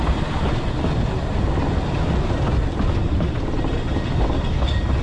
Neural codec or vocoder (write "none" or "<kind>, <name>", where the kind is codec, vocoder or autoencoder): none